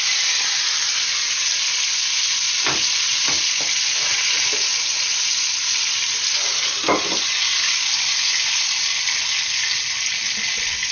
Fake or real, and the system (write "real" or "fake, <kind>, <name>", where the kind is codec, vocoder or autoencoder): real